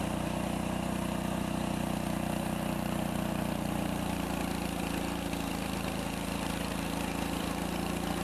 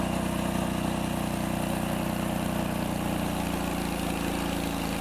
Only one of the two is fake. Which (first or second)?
first